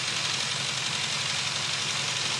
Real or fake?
real